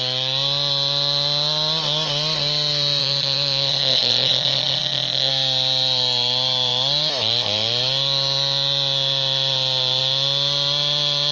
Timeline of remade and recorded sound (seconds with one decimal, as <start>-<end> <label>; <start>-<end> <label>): 0.0-3.0 recorded; 3.0-5.3 remade; 5.3-11.3 recorded

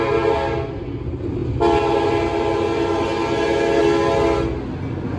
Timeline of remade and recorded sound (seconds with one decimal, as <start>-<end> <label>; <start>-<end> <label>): 0.0-5.2 recorded

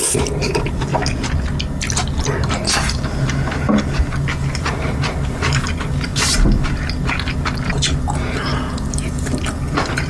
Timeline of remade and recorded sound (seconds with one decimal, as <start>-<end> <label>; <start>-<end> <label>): 0.0-0.9 remade; 0.9-4.6 recorded; 4.6-6.1 remade; 6.1-8.3 recorded; 8.3-10.1 remade

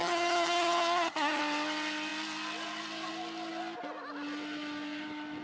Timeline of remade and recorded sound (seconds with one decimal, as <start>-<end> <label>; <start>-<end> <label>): 0.0-1.4 remade; 1.4-5.4 recorded

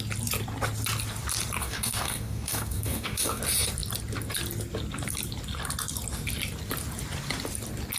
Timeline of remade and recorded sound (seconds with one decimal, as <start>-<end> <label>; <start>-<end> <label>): 0.0-1.6 recorded; 1.6-3.4 remade; 3.4-8.0 recorded

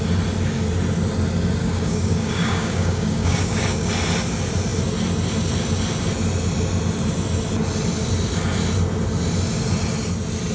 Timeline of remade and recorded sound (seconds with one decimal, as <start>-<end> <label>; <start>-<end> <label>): 0.0-1.6 recorded; 1.6-3.9 remade; 3.9-10.5 recorded